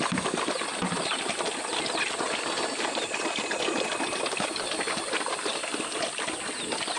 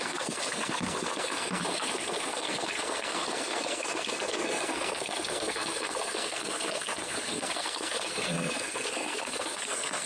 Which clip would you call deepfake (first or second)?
second